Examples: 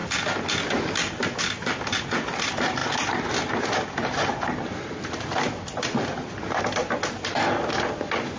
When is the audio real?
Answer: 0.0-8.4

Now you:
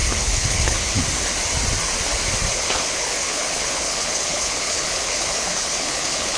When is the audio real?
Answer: 1.0-2.5

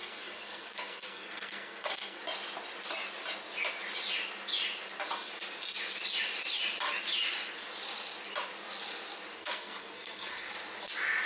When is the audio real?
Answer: 2.2-9.4; 10.5-11.3

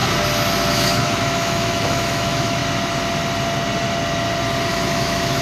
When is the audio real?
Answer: 0.0-0.7; 2.6-4.7

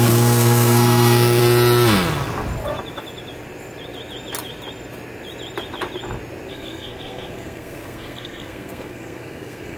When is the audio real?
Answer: 1.4-6.5

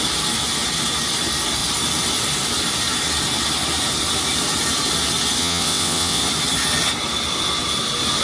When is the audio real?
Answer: 0.0-5.4; 6.2-8.2

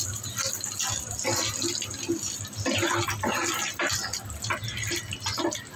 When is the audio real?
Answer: 0.0-5.8

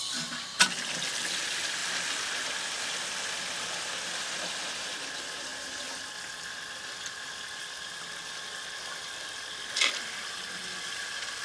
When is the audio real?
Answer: 0.0-11.4